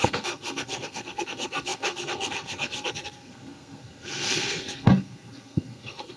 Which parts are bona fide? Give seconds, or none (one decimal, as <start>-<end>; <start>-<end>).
none